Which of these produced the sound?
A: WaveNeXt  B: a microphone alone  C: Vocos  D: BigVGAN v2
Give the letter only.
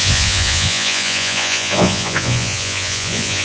C